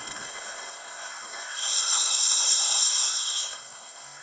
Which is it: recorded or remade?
remade